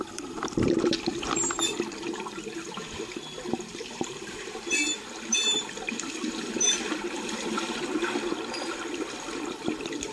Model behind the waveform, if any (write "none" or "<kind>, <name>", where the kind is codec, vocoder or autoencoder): vocoder, BigVGAN v2